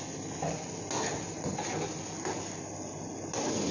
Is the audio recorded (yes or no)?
yes